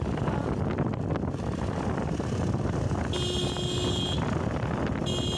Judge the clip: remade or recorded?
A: recorded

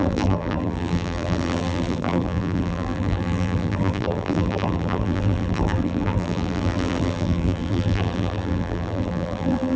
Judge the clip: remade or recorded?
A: remade